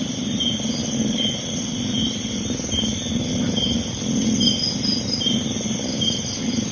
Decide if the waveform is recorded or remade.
recorded